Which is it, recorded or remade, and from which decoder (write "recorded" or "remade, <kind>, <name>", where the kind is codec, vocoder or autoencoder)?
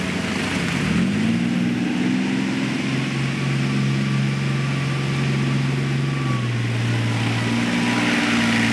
recorded